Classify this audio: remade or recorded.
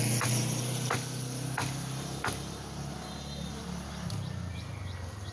recorded